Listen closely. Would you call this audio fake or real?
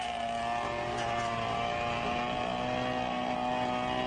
real